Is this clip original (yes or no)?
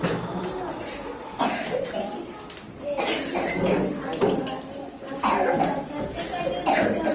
yes